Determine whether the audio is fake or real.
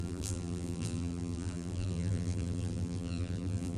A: fake